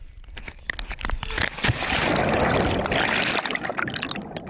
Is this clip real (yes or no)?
yes